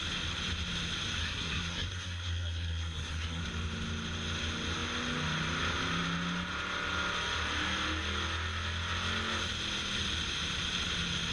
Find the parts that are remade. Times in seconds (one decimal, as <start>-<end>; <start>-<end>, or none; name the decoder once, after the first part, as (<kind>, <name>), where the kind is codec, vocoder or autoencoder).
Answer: 1.2-3.4 (codec, SNAC)